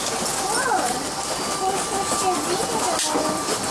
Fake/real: real